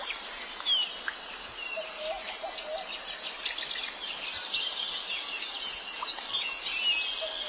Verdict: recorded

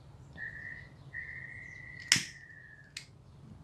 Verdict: recorded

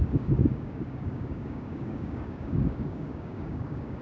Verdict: remade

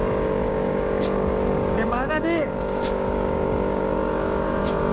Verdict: remade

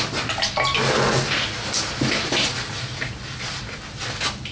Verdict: recorded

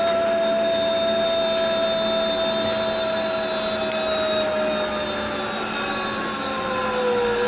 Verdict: recorded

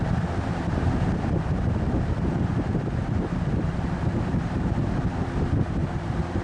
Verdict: remade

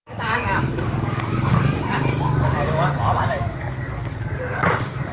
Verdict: remade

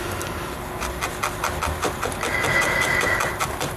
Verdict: recorded